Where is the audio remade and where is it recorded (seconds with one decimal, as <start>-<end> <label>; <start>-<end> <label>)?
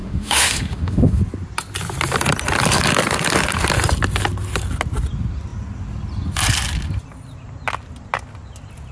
0.0-1.2 remade; 1.2-8.9 recorded